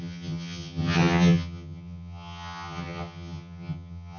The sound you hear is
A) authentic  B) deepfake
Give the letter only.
B